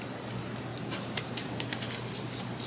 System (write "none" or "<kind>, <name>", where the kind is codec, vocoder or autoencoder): none